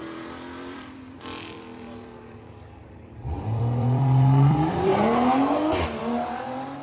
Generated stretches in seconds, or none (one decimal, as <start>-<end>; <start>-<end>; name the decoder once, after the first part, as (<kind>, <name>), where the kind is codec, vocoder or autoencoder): 0.0-4.9 (vocoder, BigVGAN v2); 6.0-6.8